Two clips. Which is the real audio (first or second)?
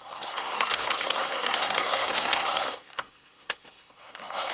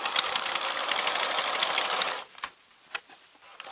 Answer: second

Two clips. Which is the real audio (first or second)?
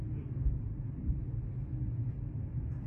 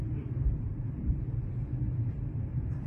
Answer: first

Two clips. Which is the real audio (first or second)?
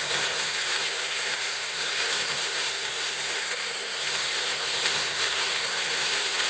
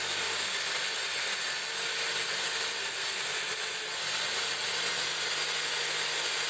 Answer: second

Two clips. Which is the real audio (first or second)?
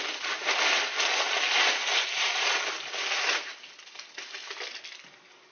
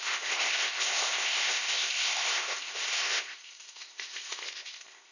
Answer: first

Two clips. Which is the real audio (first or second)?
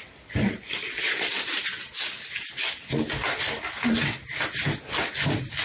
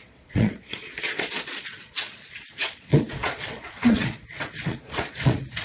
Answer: first